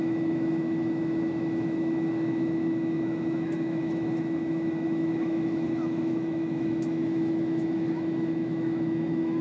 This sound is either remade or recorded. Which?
remade